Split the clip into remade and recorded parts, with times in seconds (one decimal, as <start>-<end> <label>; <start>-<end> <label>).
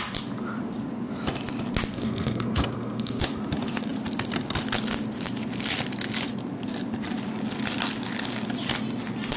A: 0.0-1.9 recorded; 1.9-3.2 remade; 3.2-9.4 recorded